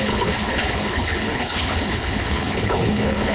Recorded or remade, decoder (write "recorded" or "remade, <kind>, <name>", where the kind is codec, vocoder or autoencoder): remade, codec, HILCodec